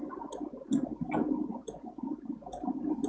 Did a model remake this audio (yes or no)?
no